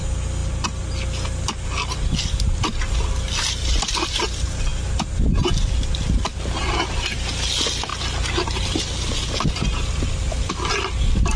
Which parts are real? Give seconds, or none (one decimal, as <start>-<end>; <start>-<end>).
0.0-11.4